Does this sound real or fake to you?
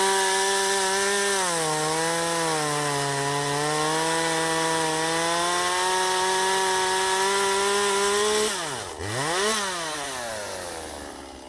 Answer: real